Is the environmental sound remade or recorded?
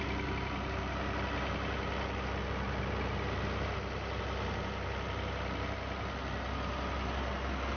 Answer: recorded